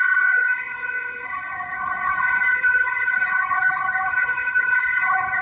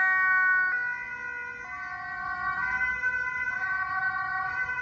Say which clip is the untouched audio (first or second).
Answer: second